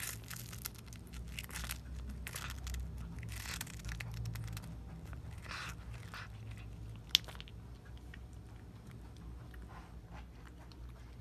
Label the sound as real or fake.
real